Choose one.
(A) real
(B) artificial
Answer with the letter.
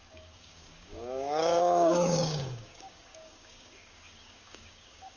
B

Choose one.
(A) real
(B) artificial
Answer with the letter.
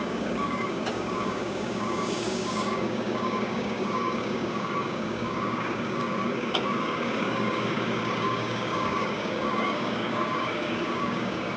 B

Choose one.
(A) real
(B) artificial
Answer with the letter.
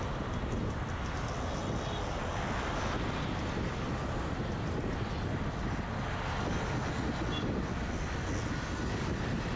A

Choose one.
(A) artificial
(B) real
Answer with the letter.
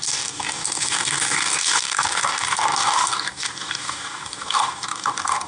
A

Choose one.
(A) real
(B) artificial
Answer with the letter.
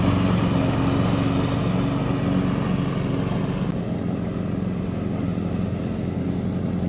A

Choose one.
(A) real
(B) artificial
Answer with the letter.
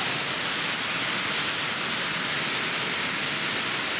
A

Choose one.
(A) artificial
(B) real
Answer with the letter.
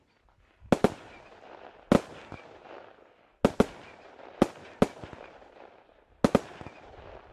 B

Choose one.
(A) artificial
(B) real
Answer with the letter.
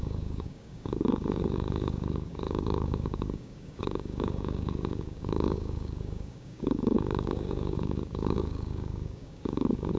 A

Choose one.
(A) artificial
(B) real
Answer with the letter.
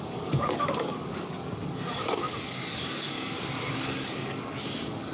A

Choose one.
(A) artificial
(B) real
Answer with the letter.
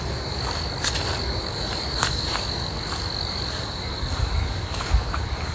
A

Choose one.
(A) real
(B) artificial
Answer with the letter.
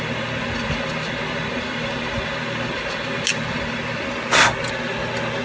A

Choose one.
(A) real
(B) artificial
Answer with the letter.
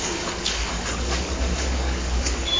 B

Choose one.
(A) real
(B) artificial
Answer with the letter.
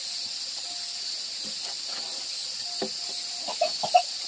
A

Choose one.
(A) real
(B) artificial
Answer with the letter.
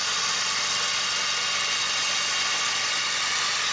A